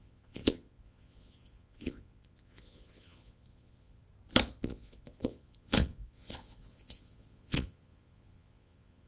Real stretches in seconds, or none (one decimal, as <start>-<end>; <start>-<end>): 4.0-4.6